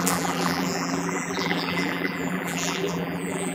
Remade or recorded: remade